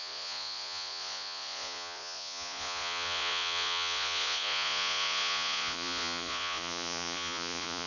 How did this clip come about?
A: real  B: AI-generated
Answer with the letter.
B